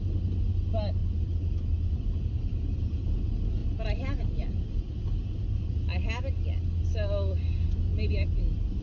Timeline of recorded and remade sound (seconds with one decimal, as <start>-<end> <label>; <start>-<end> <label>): 0.0-1.0 recorded; 1.0-3.2 remade; 3.2-3.6 recorded; 3.6-4.7 remade; 4.7-8.8 recorded